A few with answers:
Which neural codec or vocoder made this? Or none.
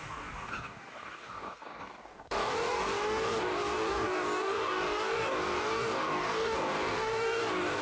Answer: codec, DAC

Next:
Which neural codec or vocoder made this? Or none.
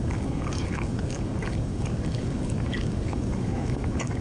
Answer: codec, DAC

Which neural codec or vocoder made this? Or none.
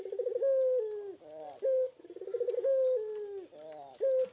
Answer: none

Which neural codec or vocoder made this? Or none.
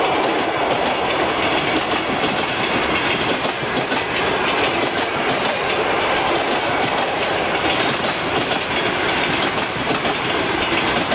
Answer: none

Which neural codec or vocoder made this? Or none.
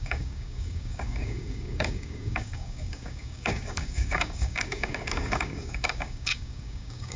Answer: codec, DAC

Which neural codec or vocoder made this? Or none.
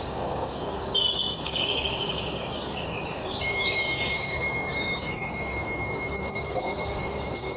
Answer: codec, DAC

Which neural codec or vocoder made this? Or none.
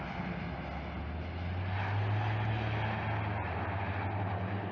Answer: none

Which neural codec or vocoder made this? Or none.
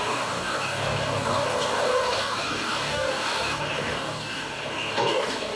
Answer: codec, DAC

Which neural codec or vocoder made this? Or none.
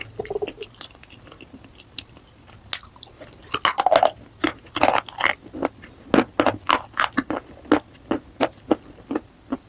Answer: none